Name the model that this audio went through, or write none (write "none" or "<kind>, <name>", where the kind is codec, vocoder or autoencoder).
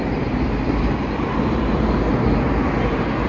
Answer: none